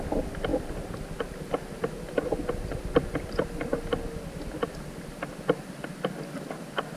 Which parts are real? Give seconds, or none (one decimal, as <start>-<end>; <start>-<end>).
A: 0.0-7.0